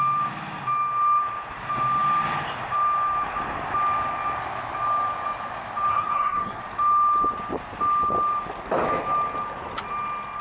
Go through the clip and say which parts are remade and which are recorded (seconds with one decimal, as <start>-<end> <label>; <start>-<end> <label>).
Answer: 0.0-5.9 recorded; 5.9-6.6 remade; 6.6-10.4 recorded